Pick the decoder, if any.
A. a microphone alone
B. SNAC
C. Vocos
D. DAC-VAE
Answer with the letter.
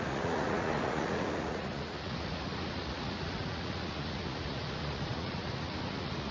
C